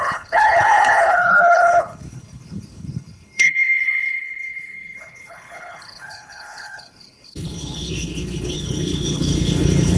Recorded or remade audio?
remade